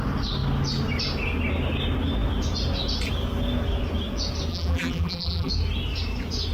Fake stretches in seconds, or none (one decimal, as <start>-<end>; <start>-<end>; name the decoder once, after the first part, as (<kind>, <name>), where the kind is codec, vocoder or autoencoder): 4.5-5.5 (vocoder, BigVGAN v2)